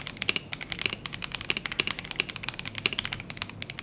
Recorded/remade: recorded